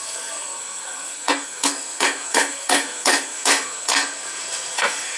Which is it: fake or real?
fake